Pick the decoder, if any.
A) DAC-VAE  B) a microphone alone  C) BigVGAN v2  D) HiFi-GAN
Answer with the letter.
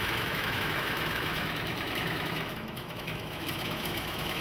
A